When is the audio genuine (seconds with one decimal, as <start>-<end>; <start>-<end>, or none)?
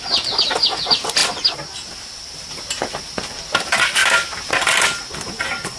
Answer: 0.0-4.0; 4.5-5.8